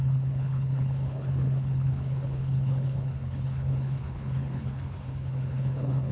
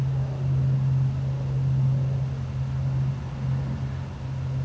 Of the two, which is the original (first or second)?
second